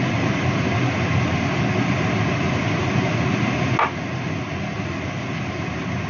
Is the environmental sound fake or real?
real